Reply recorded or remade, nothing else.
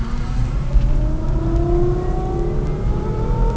recorded